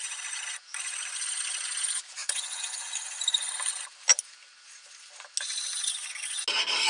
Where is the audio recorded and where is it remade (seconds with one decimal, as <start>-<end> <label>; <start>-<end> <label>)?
0.0-2.2 recorded; 2.2-2.9 remade; 2.9-6.9 recorded